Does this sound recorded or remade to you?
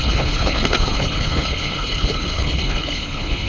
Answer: remade